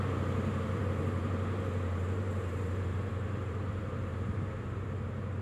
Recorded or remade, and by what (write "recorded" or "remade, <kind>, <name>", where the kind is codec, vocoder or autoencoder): remade, vocoder, BigVGAN v2